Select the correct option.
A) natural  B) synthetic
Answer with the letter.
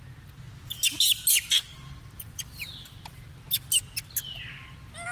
A